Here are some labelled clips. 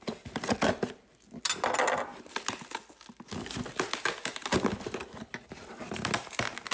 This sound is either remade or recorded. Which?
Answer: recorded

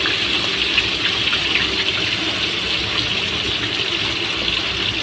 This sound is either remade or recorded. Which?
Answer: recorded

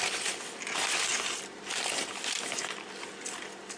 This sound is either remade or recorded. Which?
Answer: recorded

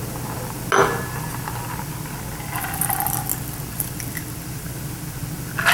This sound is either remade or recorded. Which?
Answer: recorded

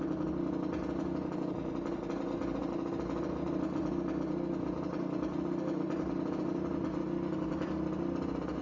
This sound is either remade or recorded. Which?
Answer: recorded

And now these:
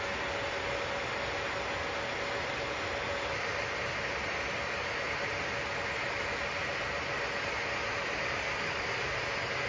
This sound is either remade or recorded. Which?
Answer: recorded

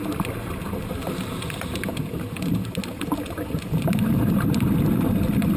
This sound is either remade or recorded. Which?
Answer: recorded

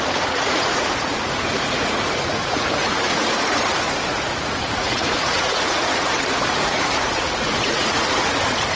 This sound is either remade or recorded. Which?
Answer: remade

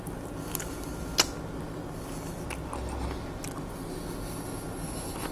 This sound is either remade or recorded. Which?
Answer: recorded